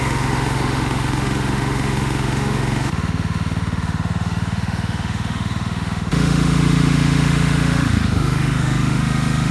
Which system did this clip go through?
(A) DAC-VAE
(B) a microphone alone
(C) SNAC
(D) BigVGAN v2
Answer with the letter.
A